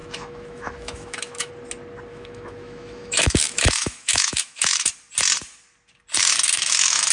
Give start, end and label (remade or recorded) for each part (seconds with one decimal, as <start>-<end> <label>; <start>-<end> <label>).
0.0-1.5 remade; 1.5-2.1 recorded; 2.1-4.9 remade; 4.9-6.2 recorded; 6.2-7.1 remade